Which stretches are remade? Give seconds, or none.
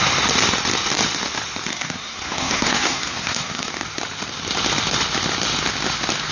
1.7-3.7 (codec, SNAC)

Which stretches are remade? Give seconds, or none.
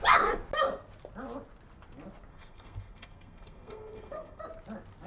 2.3-4.4 (codec, SNAC)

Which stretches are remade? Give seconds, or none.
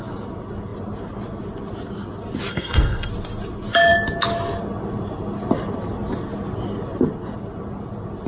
2.5-3.1 (codec, SNAC)